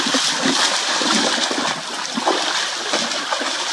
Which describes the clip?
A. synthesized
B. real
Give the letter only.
B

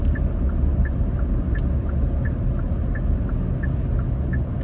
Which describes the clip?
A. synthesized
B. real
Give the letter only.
B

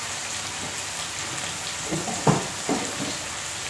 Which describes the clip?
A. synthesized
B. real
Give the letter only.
A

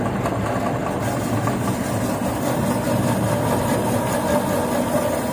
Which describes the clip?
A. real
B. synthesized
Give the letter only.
A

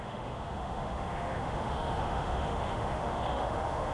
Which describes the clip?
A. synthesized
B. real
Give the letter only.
A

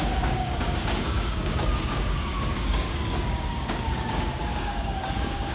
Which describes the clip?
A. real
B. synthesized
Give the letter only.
B